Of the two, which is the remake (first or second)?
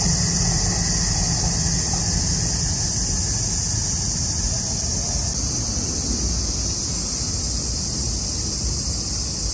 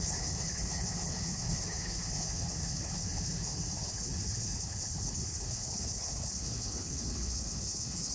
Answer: second